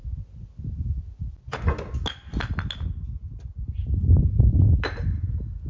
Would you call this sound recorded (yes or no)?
yes